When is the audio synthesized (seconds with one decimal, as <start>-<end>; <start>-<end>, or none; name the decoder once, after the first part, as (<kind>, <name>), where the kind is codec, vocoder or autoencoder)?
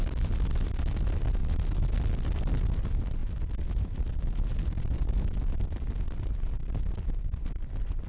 1.4-2.0 (vocoder, BigVGAN v2); 3.2-7.5